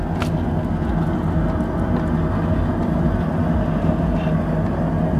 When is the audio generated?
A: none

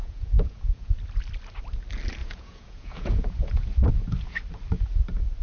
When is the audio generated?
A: 0.0-0.9; 2.2-3.9

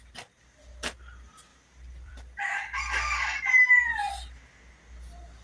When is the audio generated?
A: 1.5-4.7

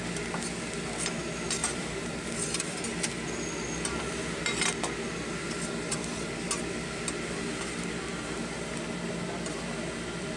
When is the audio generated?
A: 1.6-2.2

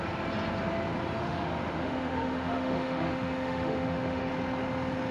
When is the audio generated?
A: 1.2-4.3

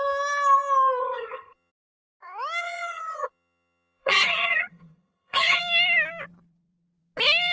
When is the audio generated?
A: 1.0-1.7; 2.6-5.6

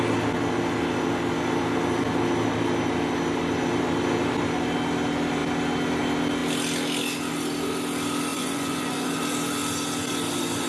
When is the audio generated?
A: 8.3-9.2